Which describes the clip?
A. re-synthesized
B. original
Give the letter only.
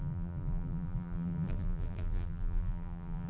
A